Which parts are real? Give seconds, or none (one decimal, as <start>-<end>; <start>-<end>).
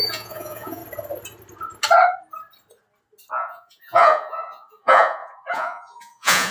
0.8-3.3